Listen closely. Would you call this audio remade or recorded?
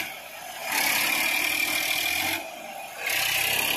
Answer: recorded